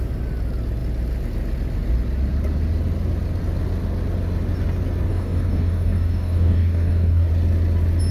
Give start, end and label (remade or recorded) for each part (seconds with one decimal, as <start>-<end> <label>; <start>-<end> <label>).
0.0-5.1 recorded; 5.1-7.3 remade; 7.3-8.1 recorded